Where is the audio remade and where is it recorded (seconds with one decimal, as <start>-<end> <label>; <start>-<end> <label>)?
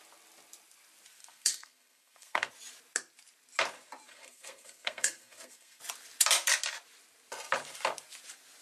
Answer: 0.0-1.2 recorded; 1.2-2.5 remade; 2.5-4.1 recorded; 4.1-5.8 remade; 5.8-8.6 recorded